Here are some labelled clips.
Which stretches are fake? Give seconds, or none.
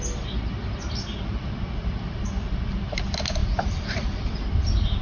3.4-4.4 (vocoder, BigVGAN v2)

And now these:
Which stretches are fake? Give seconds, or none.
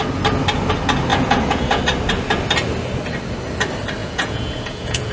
1.1-1.8 (vocoder, Vocos); 4.0-5.1